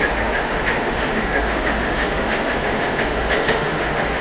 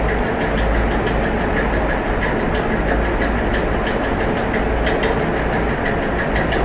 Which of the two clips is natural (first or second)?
second